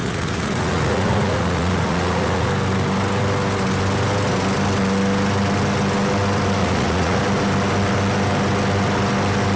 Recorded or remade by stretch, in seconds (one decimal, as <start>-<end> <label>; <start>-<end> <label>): 0.0-2.5 remade; 2.5-6.6 recorded; 6.6-7.2 remade; 7.2-9.6 recorded